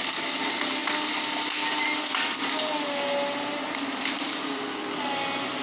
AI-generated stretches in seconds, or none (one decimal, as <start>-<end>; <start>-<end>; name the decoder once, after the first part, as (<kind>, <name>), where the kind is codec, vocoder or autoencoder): none